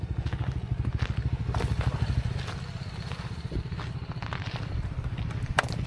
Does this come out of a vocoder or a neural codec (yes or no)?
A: no